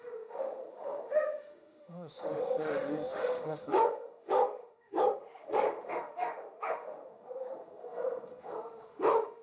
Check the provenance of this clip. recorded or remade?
remade